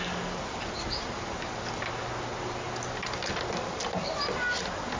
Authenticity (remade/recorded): recorded